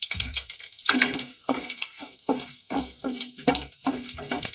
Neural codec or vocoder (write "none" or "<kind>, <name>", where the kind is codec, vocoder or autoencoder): codec, SNAC